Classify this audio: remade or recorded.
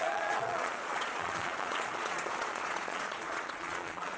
remade